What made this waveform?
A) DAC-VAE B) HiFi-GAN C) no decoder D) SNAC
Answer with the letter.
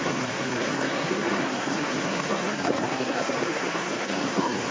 D